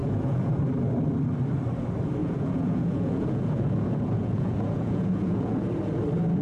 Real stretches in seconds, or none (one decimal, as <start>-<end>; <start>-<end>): 0.6-2.2; 6.0-6.4